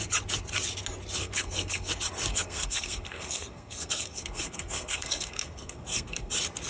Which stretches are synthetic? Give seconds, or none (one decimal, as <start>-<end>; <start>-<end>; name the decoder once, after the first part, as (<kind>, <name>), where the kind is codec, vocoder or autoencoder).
1.2-1.9 (codec, SNAC); 2.3-6.3